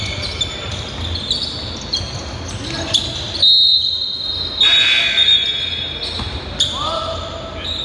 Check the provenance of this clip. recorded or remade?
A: recorded